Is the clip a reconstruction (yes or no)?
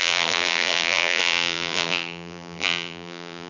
yes